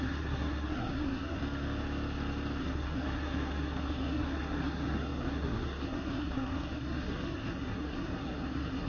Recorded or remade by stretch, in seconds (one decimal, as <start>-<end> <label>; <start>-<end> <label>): 0.0-1.4 remade; 1.4-2.6 recorded; 2.6-8.9 remade